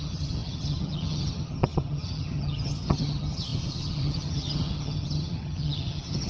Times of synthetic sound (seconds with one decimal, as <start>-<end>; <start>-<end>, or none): 0.0-6.3